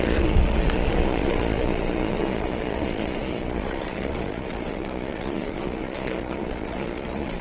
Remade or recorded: remade